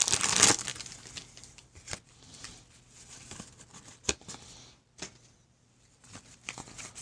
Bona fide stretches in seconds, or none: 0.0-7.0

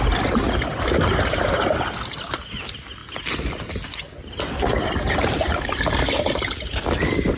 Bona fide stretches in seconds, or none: 0.0-7.4

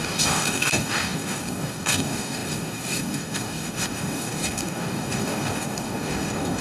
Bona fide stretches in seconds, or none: none